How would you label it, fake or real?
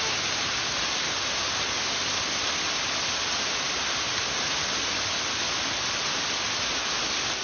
real